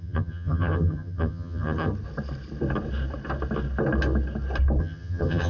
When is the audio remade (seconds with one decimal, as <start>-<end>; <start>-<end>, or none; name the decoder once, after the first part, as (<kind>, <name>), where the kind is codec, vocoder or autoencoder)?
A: 0.0-1.9 (vocoder, HiFi-GAN); 4.8-5.5